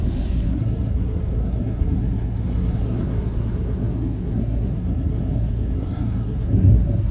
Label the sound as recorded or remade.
remade